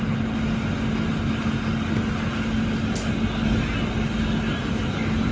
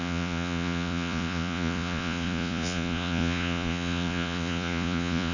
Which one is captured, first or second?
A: first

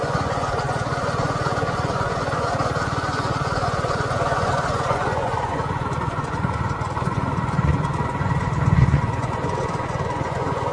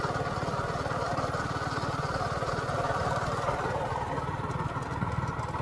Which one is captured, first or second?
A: second